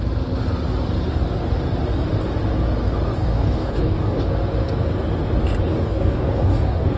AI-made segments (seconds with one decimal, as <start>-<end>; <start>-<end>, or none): 3.2-4.3; 5.7-7.0